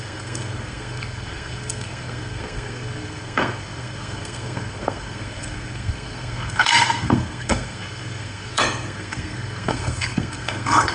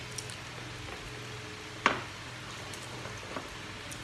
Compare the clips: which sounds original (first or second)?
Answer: second